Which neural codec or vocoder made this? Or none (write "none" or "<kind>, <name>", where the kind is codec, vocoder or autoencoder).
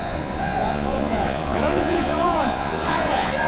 vocoder, Vocos